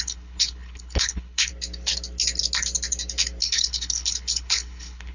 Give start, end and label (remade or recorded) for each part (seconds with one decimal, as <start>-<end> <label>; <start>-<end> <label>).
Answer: 0.0-1.5 remade; 1.5-3.4 recorded; 3.4-5.1 remade